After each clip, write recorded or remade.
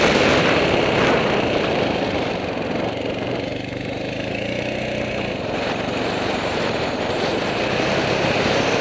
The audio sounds remade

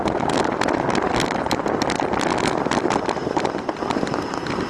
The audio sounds recorded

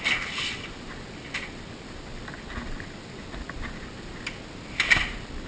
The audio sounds recorded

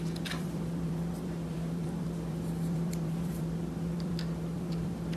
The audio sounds remade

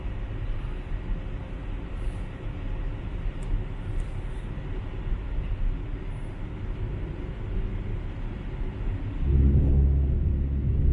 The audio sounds recorded